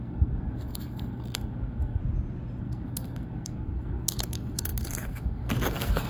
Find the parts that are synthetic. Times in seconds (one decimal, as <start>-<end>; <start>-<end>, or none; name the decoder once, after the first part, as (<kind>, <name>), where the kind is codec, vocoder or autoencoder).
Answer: 0.0-2.0 (codec, SNAC); 2.6-6.1